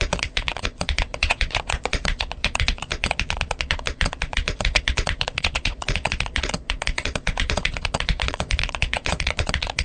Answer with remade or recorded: remade